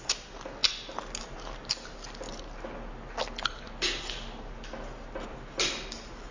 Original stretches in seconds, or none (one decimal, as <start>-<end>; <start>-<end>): 0.0-6.3